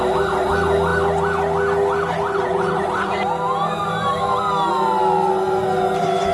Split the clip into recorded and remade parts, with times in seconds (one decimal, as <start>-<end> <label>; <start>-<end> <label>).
0.0-6.3 recorded